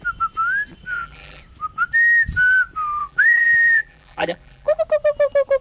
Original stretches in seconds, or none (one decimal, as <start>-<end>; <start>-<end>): 0.0-0.9; 1.4-3.0; 4.8-5.6